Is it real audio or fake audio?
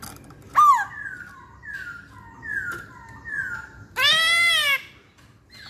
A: real